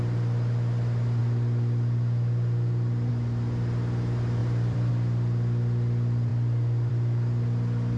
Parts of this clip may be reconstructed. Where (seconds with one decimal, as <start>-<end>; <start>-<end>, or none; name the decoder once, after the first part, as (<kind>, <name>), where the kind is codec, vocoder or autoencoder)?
4.4-4.9 (vocoder, BigVGAN v2)